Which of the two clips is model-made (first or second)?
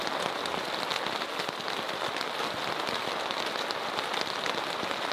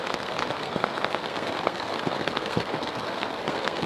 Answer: second